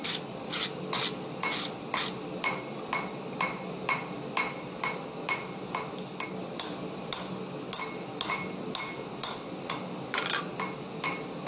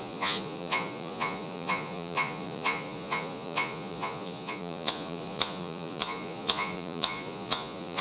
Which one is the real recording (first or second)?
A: first